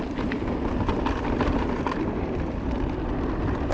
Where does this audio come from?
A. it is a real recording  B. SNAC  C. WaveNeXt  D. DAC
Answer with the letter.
A